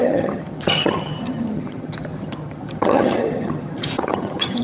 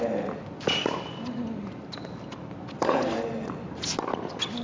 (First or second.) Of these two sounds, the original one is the second